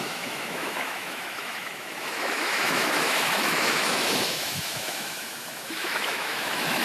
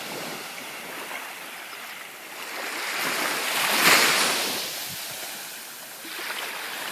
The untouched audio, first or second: second